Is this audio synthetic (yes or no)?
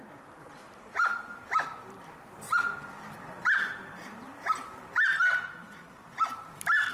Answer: no